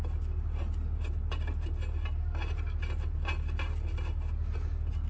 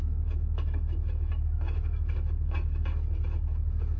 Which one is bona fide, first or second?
first